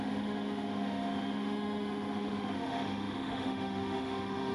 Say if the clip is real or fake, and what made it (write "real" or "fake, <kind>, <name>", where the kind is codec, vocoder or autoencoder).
fake, autoencoder, DAC-VAE